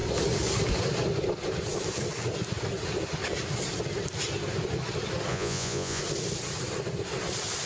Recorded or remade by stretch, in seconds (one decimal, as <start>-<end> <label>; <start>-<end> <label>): 0.0-5.3 recorded; 5.3-6.0 remade; 6.0-7.7 recorded